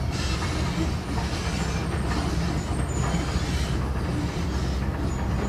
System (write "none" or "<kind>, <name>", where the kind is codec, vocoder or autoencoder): none